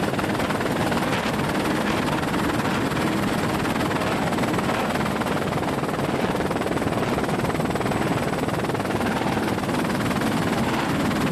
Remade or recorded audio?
recorded